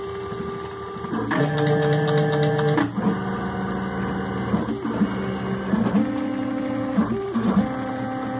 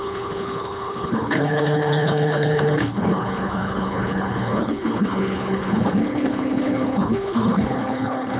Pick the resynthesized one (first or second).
second